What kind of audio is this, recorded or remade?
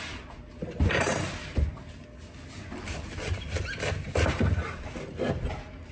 recorded